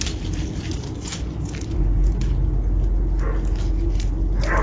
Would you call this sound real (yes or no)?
yes